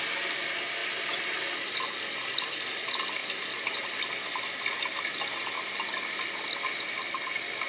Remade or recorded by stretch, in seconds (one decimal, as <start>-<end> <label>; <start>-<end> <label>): 0.0-7.7 recorded